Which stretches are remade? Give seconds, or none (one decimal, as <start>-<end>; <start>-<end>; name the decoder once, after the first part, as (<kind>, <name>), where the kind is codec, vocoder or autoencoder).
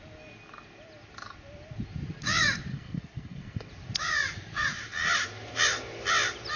2.7-3.7 (codec, SNAC)